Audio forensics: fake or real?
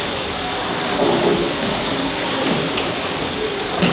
fake